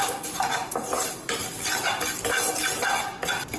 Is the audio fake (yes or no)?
no